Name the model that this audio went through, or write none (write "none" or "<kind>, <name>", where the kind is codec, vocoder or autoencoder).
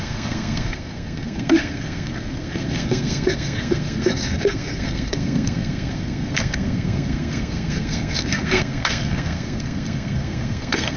codec, SNAC